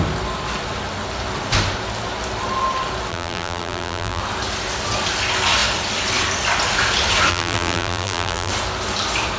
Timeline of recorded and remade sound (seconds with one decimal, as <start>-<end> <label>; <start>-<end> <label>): 0.0-3.1 recorded; 3.1-4.2 remade; 4.2-7.3 recorded; 7.3-8.5 remade; 8.5-9.4 recorded